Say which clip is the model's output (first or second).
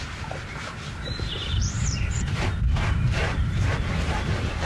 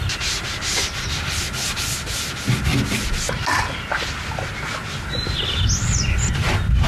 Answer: first